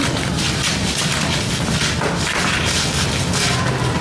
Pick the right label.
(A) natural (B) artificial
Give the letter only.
A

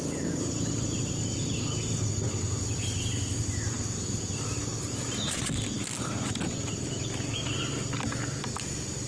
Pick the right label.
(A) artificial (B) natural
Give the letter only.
B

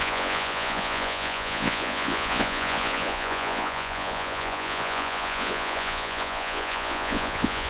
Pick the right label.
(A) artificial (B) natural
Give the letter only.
A